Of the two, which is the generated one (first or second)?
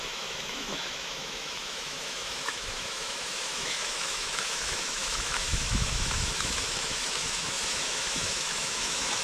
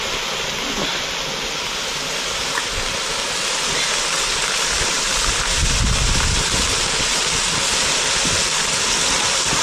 first